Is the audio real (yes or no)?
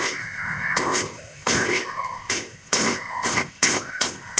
no